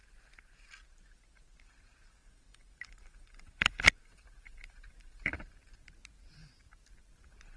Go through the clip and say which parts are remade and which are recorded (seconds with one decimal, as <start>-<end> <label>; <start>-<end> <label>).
0.0-2.2 recorded; 2.2-5.4 remade; 5.4-7.6 recorded